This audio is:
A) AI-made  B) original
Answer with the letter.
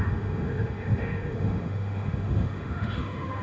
A